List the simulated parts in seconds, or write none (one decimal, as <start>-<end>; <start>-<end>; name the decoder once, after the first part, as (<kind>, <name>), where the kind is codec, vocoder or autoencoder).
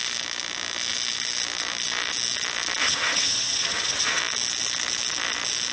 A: 2.8-4.2 (vocoder, HiFi-GAN)